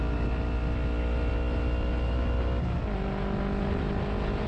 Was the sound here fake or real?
real